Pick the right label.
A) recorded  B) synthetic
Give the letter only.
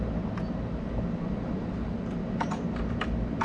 A